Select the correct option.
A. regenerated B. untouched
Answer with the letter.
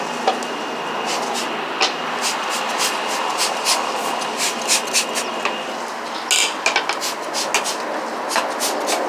B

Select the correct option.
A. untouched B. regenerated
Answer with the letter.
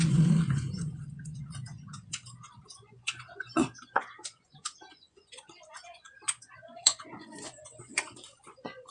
B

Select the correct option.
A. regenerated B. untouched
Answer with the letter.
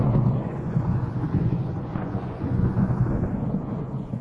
A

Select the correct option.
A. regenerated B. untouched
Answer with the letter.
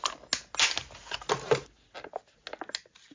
B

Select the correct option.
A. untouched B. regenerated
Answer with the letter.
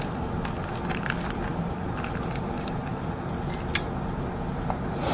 A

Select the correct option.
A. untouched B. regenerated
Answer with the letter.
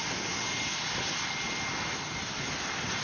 A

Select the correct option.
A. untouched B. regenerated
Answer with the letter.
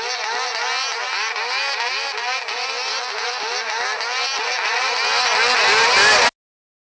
A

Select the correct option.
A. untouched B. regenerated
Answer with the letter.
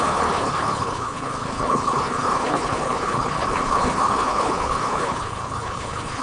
B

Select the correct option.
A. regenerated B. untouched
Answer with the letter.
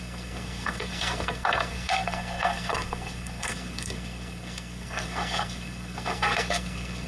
A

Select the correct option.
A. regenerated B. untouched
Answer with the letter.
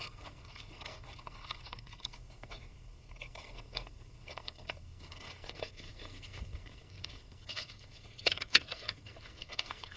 A